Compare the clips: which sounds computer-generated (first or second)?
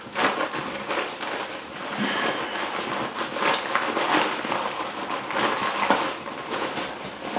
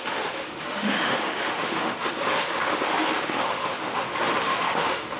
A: second